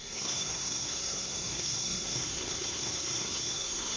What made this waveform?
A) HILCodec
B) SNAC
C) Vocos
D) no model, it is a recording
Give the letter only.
B